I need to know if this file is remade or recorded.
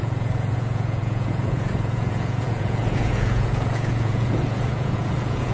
remade